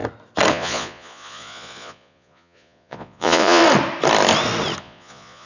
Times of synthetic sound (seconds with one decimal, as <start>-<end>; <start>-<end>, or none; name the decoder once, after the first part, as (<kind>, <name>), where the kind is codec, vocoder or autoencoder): 0.5-3.6 (vocoder, Vocos); 4.8-5.5